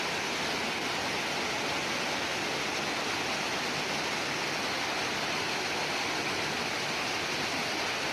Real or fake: real